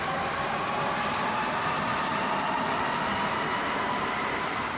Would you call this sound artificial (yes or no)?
no